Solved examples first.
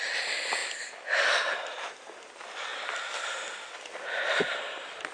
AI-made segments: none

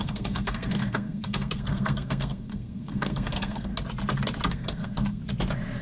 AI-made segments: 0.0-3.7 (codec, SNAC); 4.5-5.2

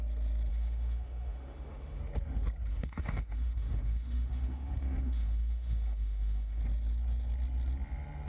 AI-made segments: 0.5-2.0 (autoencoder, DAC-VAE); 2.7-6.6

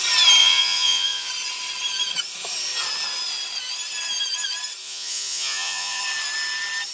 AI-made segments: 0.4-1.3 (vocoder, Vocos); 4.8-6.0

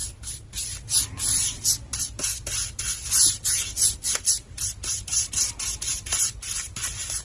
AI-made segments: 0.0-0.5 (vocoder, BigVGAN v2); 2.3-5.3

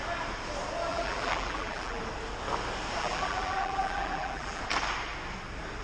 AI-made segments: 0.9-2.0 (vocoder, BigVGAN v2); 3.0-4.6

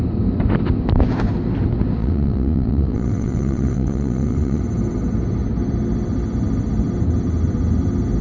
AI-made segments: 2.0-4.6 (vocoder, WaveNeXt)

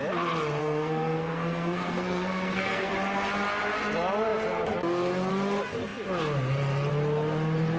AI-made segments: 0.6-2.9 (codec, SNAC)